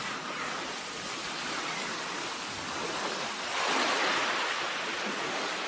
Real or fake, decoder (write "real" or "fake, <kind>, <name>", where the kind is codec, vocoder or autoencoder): real